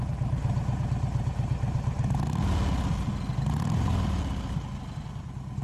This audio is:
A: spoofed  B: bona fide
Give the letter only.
B